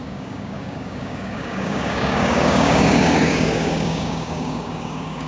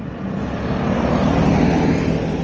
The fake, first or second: first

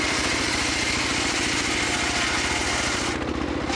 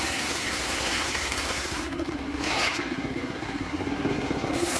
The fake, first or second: second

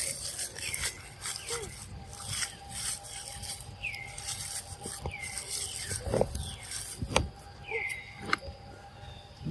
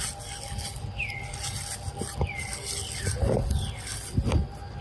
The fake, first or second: first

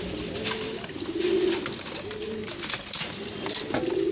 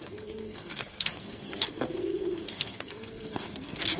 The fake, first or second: second